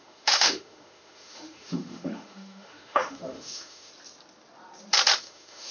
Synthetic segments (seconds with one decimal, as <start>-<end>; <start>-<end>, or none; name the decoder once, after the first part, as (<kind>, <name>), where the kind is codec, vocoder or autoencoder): 0.0-3.9 (autoencoder, DAC-VAE); 5.2-5.7